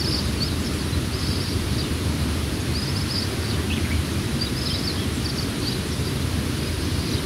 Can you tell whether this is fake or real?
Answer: real